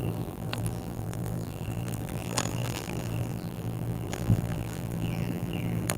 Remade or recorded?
remade